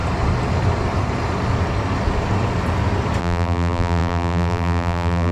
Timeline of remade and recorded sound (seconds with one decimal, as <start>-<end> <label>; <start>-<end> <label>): 0.0-3.2 recorded; 3.2-5.3 remade